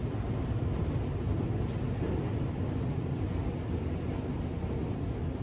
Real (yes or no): yes